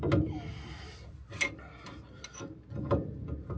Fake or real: real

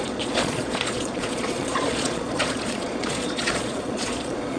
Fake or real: fake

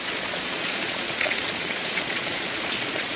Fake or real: fake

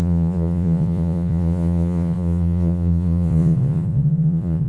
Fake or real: fake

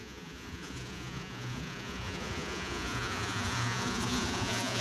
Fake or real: fake